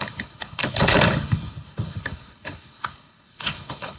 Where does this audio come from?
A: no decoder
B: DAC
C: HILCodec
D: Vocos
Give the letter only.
C